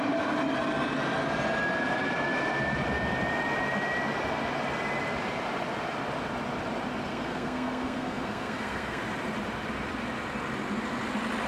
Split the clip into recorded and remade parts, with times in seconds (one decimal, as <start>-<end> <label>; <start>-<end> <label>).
0.0-7.1 recorded; 7.1-9.0 remade; 9.0-11.5 recorded